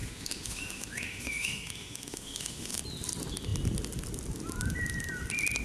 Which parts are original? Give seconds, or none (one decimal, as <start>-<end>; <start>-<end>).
2.8-5.6